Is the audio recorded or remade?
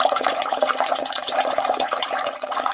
remade